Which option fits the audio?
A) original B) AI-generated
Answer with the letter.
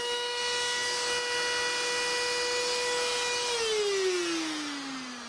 A